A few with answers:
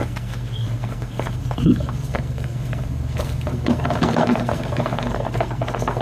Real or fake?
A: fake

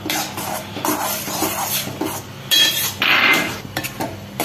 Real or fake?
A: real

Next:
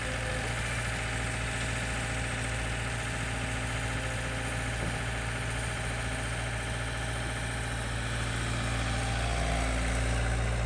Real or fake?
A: real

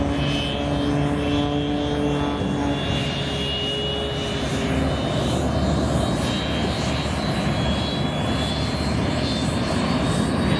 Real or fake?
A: real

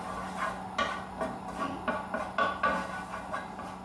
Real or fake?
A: real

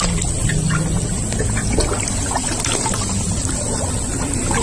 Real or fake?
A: real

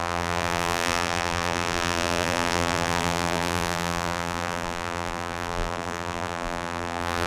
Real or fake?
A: fake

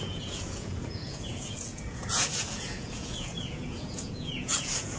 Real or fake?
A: fake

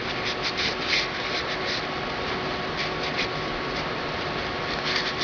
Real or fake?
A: real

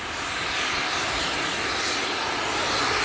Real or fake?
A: real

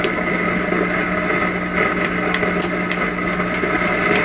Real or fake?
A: real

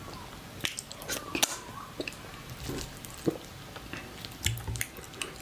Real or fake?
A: real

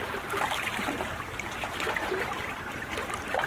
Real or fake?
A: fake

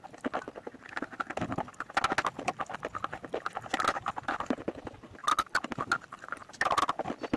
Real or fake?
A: real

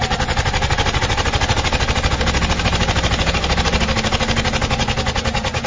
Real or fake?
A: real